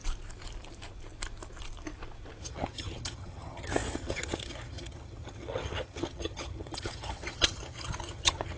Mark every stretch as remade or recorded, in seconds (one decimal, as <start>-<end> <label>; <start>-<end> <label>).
0.0-2.4 recorded; 2.4-8.6 remade